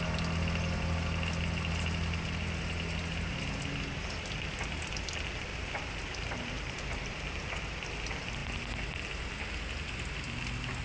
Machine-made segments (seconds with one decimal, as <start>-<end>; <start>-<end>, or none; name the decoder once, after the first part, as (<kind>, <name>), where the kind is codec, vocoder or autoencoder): 5.5-7.6 (vocoder, BigVGAN v2)